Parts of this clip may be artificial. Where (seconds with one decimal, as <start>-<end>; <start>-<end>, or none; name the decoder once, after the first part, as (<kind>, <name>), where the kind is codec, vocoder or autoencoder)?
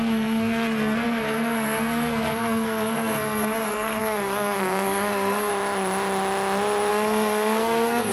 0.0-5.5 (codec, SNAC); 6.9-8.1